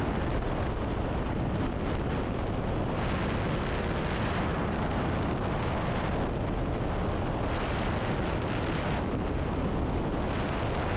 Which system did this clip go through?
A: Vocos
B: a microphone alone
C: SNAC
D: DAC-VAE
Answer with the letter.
B